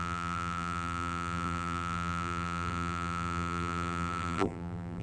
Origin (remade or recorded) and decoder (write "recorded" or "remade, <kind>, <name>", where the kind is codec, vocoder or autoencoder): remade, vocoder, BigVGAN v2